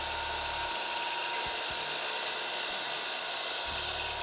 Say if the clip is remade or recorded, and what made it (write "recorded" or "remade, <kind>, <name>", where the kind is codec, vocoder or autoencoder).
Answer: recorded